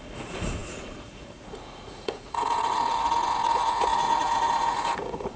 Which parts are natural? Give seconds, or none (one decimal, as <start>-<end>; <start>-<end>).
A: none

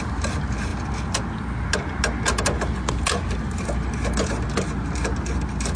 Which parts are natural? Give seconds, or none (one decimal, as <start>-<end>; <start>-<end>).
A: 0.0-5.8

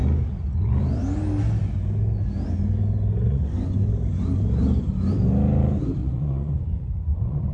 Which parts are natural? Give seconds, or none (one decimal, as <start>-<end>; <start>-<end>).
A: 0.0-3.3; 3.9-6.0

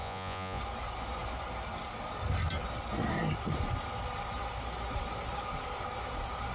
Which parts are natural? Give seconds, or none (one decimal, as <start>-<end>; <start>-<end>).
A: 0.6-6.5

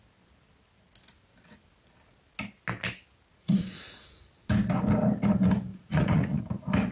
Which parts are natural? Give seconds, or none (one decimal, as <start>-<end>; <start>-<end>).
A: 0.0-3.3; 4.3-5.7; 6.4-6.9

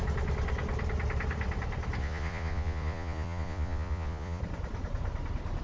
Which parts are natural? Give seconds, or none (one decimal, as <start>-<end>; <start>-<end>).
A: 0.0-2.0; 4.4-5.6